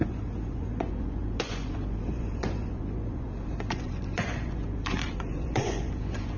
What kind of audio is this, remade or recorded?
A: remade